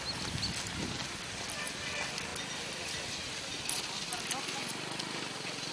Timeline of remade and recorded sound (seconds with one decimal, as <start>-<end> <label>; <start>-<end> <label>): 0.0-5.7 recorded